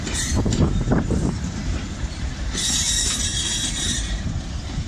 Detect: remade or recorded remade